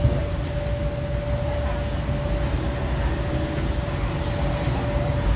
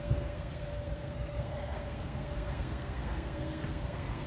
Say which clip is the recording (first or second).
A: first